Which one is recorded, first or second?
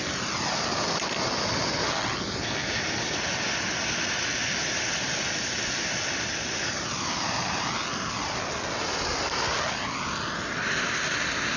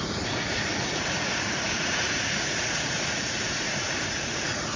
first